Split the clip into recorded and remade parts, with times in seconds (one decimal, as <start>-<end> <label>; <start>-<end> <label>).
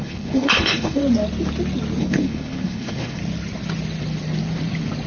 0.0-1.0 remade; 1.0-2.0 recorded; 2.0-3.2 remade; 3.2-5.1 recorded